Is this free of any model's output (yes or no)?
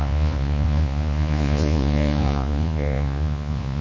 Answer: no